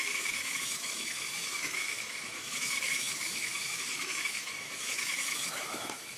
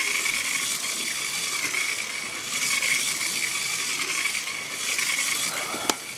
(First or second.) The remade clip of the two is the first